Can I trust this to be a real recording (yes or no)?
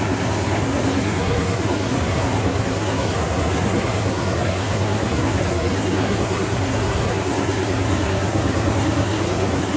no